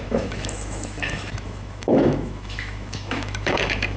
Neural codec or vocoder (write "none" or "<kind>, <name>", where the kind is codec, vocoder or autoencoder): autoencoder, DAC-VAE